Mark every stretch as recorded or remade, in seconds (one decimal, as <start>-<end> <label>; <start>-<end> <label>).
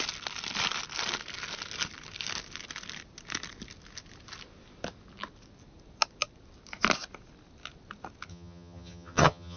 0.0-8.3 recorded; 8.3-9.6 remade